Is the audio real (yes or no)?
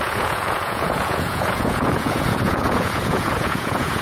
no